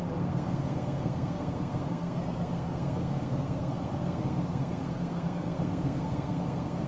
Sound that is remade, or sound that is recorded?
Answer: remade